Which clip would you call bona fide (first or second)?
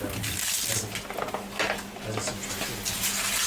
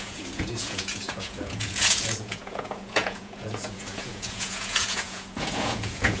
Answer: first